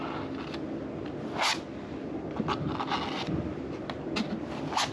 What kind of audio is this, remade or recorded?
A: recorded